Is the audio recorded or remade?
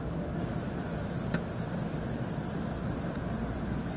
remade